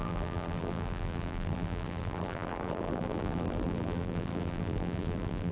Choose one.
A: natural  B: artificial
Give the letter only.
B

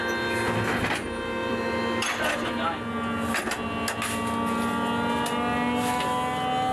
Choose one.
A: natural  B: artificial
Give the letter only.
A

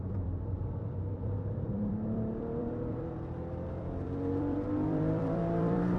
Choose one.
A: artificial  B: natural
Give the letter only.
A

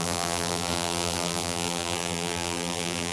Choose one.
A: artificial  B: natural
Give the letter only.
A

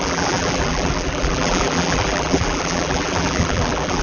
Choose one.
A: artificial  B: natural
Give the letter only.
A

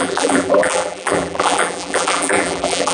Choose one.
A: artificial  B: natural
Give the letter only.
A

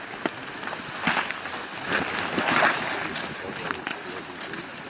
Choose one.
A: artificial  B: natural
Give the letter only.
B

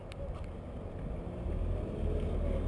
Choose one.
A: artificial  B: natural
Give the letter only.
B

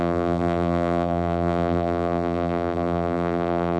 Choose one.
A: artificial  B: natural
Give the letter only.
A